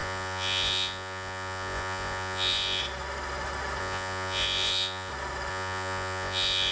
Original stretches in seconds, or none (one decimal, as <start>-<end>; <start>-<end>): 2.8-3.8; 5.1-5.5